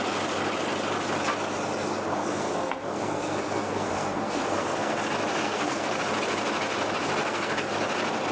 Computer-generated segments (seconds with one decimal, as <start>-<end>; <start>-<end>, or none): 2.1-5.0; 5.4-6.0; 7.2-7.7